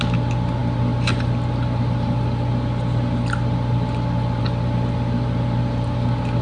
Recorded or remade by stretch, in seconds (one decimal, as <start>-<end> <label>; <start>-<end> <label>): 0.0-6.4 recorded